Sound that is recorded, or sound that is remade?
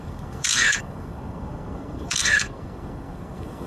remade